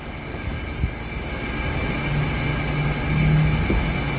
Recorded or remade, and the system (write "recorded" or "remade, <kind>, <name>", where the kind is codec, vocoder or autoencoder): recorded